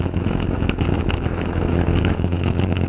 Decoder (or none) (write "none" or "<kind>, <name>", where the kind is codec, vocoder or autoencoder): autoencoder, DAC-VAE